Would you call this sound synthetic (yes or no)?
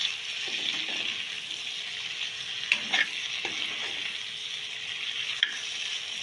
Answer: no